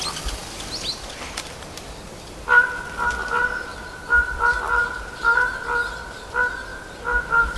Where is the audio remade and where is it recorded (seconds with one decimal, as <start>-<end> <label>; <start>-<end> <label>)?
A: 0.0-7.6 recorded